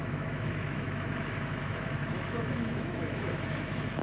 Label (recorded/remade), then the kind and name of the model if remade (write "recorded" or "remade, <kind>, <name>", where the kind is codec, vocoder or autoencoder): remade, autoencoder, DAC-VAE